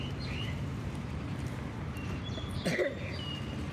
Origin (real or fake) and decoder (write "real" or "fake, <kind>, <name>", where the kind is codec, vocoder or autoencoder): fake, vocoder, BigVGAN v2